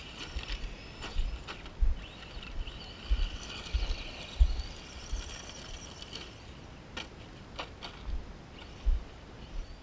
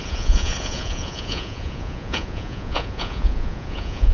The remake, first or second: second